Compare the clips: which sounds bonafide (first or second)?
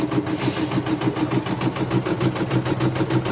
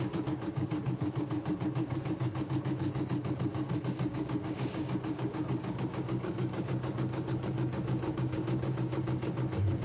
first